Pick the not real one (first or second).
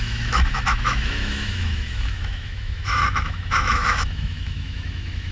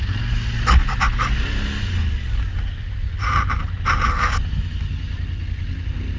first